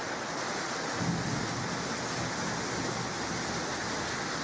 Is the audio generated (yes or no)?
no